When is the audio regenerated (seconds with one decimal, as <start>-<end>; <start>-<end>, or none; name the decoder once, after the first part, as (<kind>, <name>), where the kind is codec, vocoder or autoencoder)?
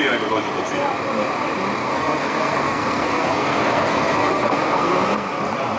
1.8-5.3 (codec, SNAC)